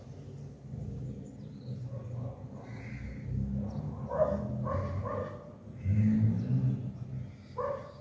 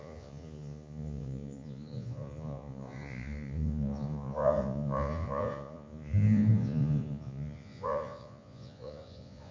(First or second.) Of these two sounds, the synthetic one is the second